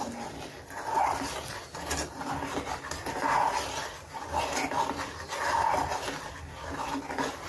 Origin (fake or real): real